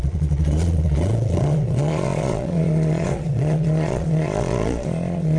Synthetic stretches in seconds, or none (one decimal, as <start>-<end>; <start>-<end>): 0.0-5.4